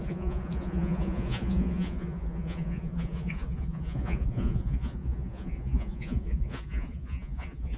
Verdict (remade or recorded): remade